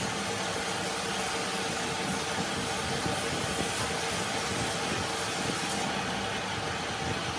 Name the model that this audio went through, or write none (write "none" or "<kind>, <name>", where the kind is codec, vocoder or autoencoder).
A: none